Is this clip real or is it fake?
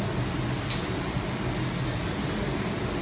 real